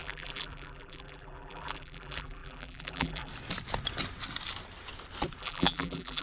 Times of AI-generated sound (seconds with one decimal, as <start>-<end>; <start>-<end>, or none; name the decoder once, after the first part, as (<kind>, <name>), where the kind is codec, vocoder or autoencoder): 0.0-3.3 (vocoder, BigVGAN v2); 5.4-6.2